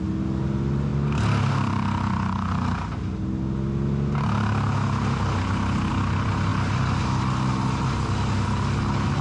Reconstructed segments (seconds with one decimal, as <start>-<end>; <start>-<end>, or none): none